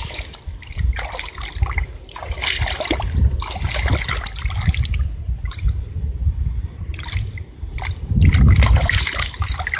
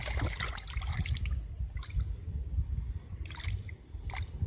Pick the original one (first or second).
second